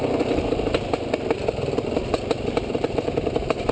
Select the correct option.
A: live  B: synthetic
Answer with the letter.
A